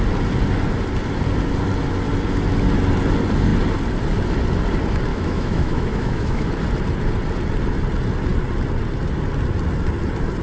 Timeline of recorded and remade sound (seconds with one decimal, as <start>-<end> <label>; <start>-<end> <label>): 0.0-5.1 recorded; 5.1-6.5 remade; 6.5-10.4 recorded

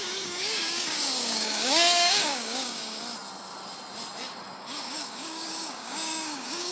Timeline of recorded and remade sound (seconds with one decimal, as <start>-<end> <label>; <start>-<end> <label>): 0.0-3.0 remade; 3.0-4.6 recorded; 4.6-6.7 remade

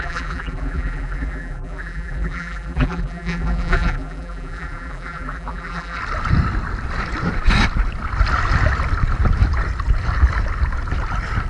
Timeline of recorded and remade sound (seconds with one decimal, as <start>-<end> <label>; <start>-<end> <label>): 0.0-6.0 remade; 6.0-11.5 recorded

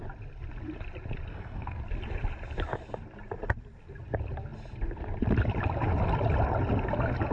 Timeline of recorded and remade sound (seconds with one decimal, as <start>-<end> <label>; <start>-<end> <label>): 0.0-1.3 recorded; 1.3-1.8 remade; 1.8-7.3 recorded